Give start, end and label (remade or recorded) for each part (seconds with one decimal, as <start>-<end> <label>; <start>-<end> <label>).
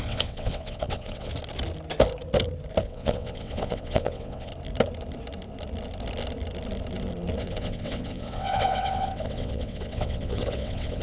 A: 0.0-1.3 remade; 1.3-2.8 recorded; 2.8-4.5 remade; 4.5-7.4 recorded; 7.4-11.0 remade